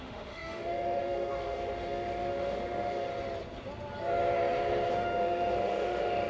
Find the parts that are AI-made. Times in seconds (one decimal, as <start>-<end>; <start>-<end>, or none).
0.0-3.1; 4.9-6.3